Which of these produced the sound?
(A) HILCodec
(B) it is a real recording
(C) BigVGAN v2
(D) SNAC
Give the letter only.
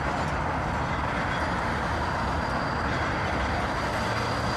B